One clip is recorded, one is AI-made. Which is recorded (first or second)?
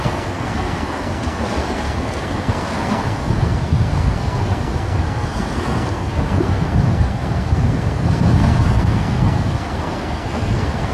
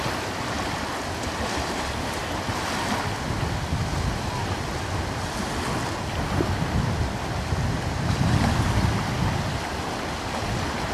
second